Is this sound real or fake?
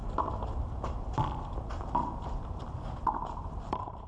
fake